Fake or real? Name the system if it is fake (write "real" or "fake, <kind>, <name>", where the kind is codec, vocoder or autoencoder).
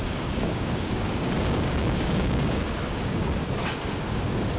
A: fake, codec, DAC